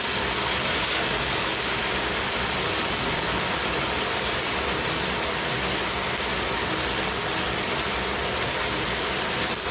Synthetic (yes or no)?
no